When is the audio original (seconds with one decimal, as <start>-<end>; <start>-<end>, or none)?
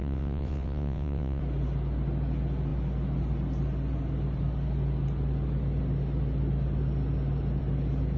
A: 1.4-8.2